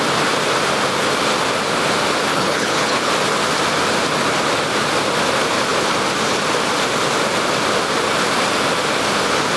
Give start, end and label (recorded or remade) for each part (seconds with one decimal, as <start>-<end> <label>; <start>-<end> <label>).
0.0-2.3 recorded; 2.3-3.1 remade; 3.1-9.6 recorded